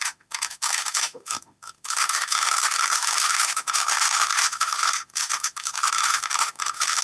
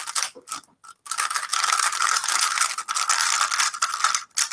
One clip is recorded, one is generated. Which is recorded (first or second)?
second